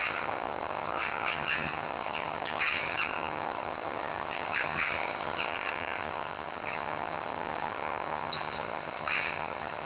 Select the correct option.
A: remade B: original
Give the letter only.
A